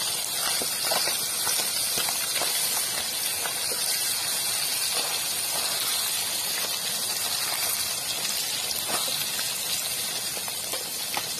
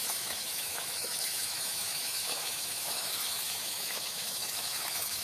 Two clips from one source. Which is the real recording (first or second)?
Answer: first